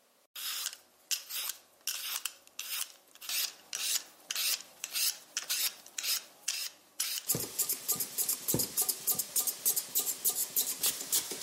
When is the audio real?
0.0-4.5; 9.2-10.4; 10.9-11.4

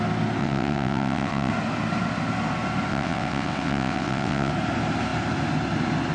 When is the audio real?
0.0-0.4; 1.5-2.9; 4.5-6.1

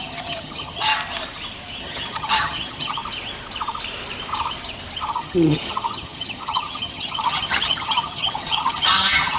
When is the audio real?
0.9-1.8; 3.0-5.1

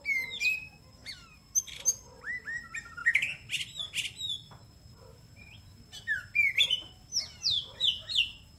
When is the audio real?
0.0-8.6

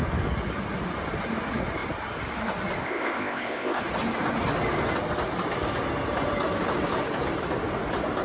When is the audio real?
0.0-2.8; 3.8-8.2

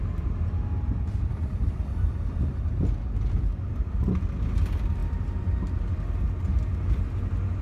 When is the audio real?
0.0-7.6

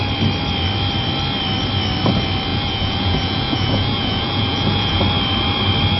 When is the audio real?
0.0-2.5; 5.0-6.0